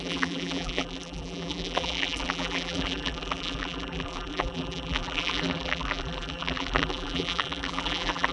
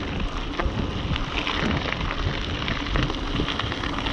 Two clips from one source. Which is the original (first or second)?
second